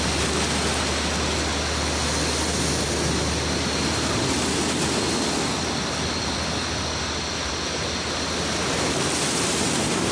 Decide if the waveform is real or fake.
real